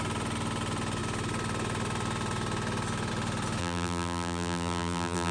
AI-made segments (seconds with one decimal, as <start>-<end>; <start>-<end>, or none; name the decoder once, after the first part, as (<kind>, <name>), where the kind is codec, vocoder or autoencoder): 3.6-5.3 (vocoder, BigVGAN v2)